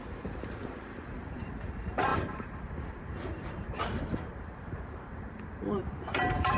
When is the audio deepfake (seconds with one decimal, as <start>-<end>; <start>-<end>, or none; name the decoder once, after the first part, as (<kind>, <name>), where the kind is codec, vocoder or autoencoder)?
0.0-6.6 (vocoder, BigVGAN v2)